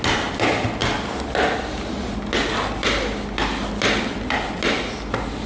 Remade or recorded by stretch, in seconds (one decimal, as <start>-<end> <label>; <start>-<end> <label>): 0.0-5.5 recorded